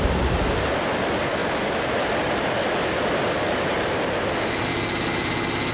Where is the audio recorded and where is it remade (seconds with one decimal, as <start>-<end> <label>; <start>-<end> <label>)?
0.0-5.7 recorded

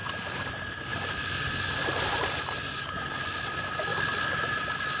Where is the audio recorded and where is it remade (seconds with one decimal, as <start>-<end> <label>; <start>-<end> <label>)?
0.0-0.9 recorded; 0.9-2.4 remade; 2.4-3.9 recorded; 3.9-4.6 remade; 4.6-5.0 recorded

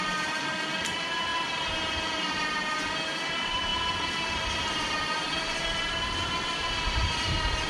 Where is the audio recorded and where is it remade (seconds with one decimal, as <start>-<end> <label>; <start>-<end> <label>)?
0.0-1.3 remade; 1.3-3.3 recorded; 3.3-7.7 remade

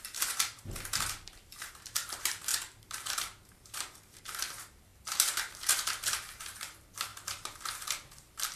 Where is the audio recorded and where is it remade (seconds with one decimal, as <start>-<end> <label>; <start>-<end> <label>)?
0.0-8.6 remade

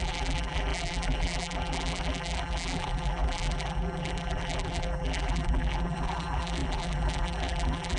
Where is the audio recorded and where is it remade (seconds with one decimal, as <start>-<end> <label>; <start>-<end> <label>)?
0.0-8.0 remade

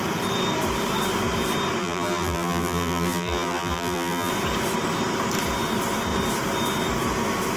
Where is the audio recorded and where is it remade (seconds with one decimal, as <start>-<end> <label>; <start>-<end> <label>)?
0.0-1.8 recorded; 1.8-4.3 remade; 4.3-7.6 recorded